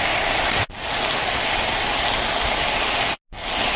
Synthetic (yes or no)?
no